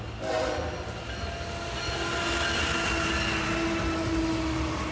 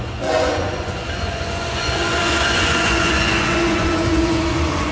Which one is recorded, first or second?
first